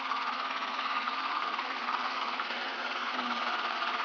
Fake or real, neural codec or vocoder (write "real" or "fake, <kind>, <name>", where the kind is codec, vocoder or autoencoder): fake, codec, SNAC